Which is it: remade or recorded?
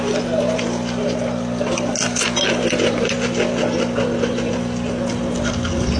recorded